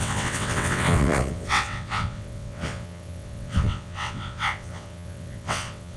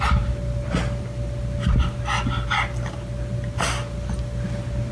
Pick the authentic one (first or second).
second